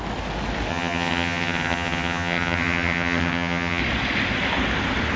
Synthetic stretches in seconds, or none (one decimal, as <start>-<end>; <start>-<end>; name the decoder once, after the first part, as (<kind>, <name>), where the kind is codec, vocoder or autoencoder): 0.7-3.8 (vocoder, HiFi-GAN)

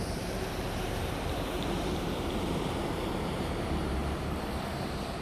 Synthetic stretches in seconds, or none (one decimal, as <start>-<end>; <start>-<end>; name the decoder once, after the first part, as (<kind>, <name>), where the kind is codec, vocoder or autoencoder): 0.0-4.0 (vocoder, BigVGAN v2); 4.7-5.2

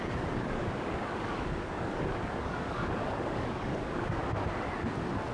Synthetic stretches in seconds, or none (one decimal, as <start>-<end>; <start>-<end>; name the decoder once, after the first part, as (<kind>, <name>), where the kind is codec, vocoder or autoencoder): 0.0-4.2 (codec, DAC)

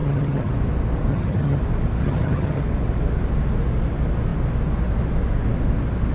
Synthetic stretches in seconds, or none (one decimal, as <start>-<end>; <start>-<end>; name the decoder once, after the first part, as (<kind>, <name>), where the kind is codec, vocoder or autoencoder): 0.0-0.5 (vocoder, HiFi-GAN); 1.1-1.6; 2.0-2.6

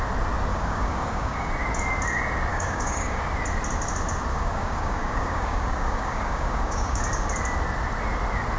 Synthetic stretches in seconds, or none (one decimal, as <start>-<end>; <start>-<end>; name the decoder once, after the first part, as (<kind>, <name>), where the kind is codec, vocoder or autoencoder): 0.5-1.5 (codec, DAC); 2.5-3.2; 4.3-7.0